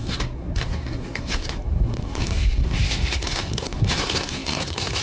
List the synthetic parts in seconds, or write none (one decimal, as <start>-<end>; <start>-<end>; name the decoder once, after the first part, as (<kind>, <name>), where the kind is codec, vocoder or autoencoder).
0.0-5.0 (codec, SNAC)